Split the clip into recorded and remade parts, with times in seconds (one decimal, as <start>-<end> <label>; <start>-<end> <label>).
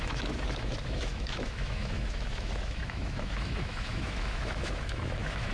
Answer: 0.0-5.5 remade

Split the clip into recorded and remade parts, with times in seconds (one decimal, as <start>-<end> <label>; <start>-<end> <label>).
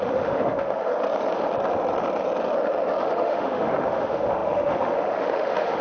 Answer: 0.0-0.9 remade; 0.9-3.0 recorded; 3.0-5.8 remade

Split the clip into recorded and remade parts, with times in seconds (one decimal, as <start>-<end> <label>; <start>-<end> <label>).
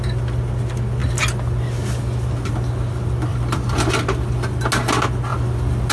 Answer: 0.0-3.3 recorded; 3.3-3.9 remade; 3.9-5.9 recorded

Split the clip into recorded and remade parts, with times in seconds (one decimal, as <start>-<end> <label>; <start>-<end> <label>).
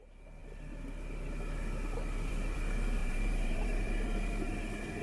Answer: 0.0-3.0 recorded; 3.0-4.5 remade; 4.5-5.0 recorded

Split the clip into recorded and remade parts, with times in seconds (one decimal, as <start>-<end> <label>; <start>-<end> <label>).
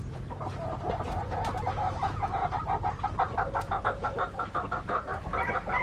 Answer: 0.0-1.7 recorded; 1.7-2.4 remade; 2.4-3.8 recorded; 3.8-5.1 remade; 5.1-5.8 recorded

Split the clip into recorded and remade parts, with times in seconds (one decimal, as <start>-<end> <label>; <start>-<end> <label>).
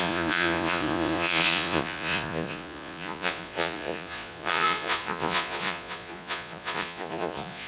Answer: 0.0-7.7 remade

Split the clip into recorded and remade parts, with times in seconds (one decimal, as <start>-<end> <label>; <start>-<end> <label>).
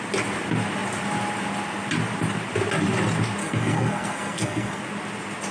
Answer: 0.0-3.4 recorded; 3.4-4.8 remade; 4.8-5.5 recorded